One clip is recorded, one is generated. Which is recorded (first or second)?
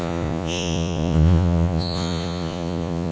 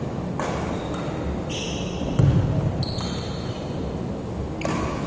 second